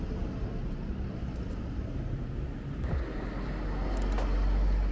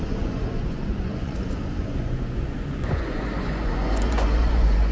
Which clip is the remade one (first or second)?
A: second